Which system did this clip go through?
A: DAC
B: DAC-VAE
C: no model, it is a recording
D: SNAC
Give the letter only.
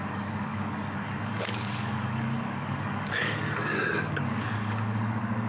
A